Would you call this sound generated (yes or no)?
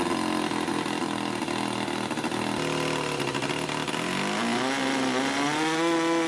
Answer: no